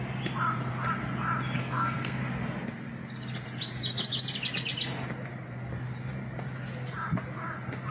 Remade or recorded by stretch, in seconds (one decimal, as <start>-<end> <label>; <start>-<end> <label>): 0.0-1.6 recorded; 1.6-2.2 remade; 2.2-7.9 recorded